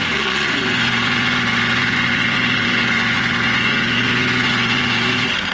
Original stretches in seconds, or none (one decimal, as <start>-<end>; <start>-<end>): none